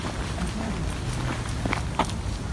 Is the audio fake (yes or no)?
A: no